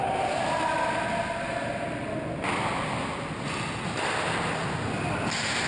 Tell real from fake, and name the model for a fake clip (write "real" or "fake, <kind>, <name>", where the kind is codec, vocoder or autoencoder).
real